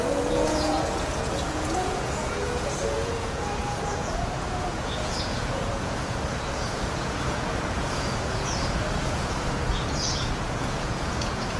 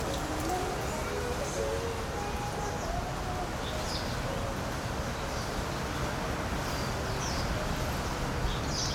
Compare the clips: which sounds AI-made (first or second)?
first